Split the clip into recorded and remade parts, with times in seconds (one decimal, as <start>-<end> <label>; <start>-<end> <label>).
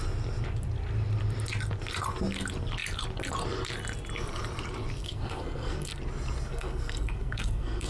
0.0-5.0 recorded; 5.0-6.0 remade; 6.0-6.5 recorded; 6.5-7.9 remade